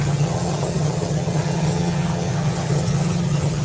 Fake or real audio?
fake